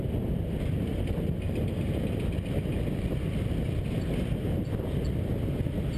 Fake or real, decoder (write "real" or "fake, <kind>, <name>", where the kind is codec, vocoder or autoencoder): real